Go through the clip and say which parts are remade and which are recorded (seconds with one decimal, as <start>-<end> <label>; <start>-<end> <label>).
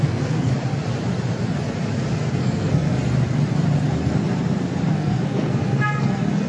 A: 0.0-0.5 remade; 0.5-2.3 recorded; 2.3-3.0 remade; 3.0-4.9 recorded; 4.9-6.5 remade